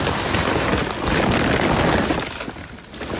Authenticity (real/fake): real